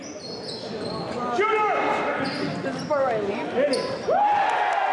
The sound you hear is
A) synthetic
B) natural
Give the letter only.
B